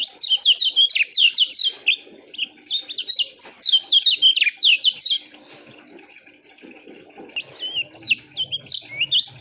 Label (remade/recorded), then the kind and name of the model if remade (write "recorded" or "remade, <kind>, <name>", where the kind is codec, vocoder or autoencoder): recorded